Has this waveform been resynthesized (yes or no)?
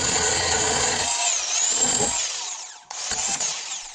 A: yes